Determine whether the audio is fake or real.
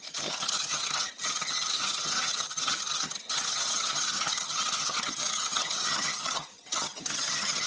fake